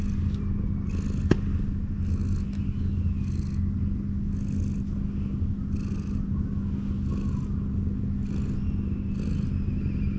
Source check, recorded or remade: recorded